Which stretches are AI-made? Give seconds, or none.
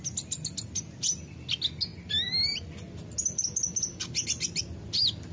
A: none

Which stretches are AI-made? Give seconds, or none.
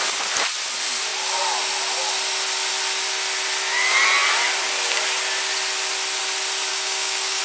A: 6.7-7.4 (codec, DAC)